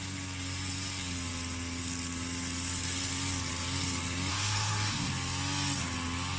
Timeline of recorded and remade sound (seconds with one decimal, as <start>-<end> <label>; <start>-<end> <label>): 0.0-4.3 recorded; 4.3-5.1 remade; 5.1-6.4 recorded